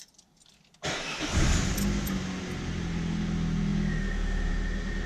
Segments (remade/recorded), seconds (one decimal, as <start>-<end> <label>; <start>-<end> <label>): 0.0-5.1 recorded